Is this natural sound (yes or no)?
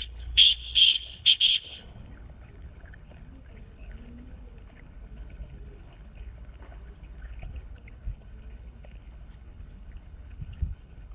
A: no